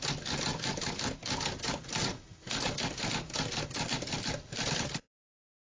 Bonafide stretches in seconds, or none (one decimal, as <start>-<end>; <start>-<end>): 0.0-5.6